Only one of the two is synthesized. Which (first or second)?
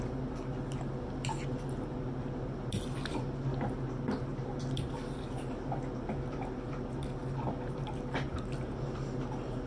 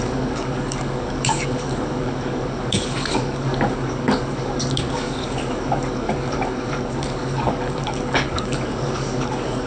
second